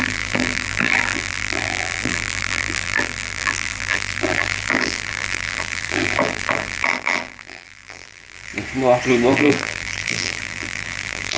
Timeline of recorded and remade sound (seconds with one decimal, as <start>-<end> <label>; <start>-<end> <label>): 0.0-8.5 remade; 8.5-9.3 recorded; 9.3-11.4 remade